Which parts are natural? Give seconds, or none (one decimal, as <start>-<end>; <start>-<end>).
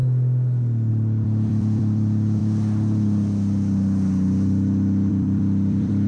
0.0-0.9; 2.4-5.1